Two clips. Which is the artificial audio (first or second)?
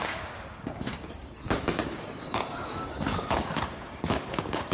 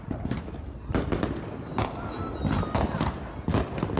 first